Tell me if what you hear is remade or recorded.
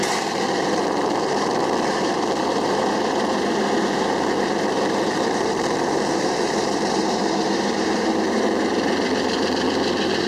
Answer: remade